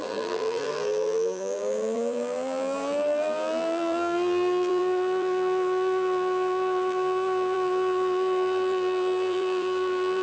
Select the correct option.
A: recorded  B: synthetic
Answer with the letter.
B